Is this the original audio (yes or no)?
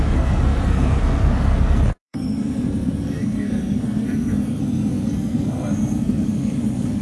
no